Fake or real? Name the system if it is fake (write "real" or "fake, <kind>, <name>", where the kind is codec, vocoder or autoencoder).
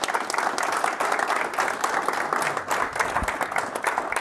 real